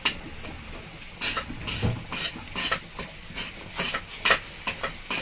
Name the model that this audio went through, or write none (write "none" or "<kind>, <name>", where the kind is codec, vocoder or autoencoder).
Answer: none